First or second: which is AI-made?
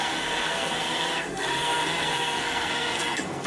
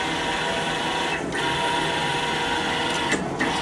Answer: first